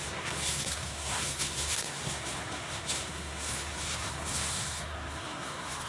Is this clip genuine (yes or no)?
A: no